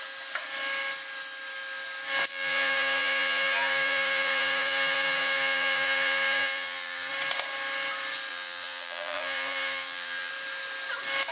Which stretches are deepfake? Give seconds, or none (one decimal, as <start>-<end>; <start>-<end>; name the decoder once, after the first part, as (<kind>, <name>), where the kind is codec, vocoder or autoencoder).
2.3-7.1 (vocoder, BigVGAN v2); 8.3-10.3